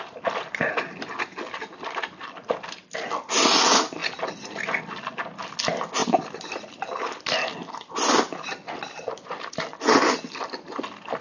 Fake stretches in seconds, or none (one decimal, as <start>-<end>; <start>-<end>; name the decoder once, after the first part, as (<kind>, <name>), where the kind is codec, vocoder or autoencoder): none

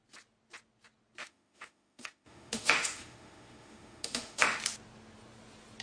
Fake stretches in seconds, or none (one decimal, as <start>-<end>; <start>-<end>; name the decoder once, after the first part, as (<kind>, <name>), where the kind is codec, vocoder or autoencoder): 1.2-4.6 (autoencoder, DAC-VAE)

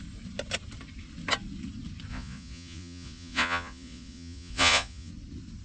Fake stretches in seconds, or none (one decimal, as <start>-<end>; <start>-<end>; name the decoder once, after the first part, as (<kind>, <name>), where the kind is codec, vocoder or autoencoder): 2.1-5.1 (vocoder, Vocos)